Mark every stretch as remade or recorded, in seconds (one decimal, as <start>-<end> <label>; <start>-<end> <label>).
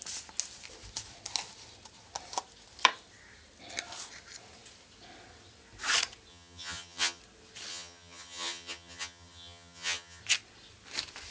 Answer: 0.0-6.3 recorded; 6.3-7.2 remade; 7.2-7.7 recorded; 7.7-10.2 remade; 10.2-11.3 recorded